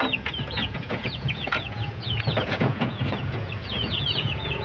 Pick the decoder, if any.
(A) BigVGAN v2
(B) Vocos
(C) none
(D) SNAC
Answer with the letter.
B